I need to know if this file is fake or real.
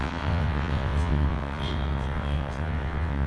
fake